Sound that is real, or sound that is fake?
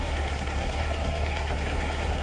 fake